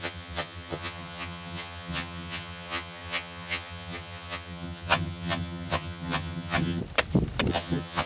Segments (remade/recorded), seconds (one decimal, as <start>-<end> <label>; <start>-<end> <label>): 0.0-6.8 remade; 6.8-7.5 recorded; 7.5-8.1 remade